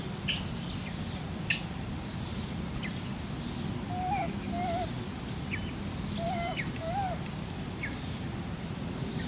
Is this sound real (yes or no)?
yes